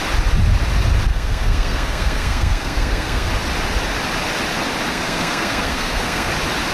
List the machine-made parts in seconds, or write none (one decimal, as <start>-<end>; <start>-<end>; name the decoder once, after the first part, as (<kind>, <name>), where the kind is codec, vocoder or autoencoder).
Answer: 1.1-3.3 (codec, SNAC); 4.9-6.3